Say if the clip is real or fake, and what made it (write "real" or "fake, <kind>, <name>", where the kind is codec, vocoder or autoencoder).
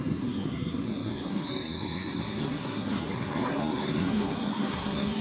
fake, codec, SNAC